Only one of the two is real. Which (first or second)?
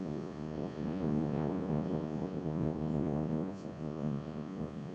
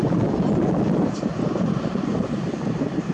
second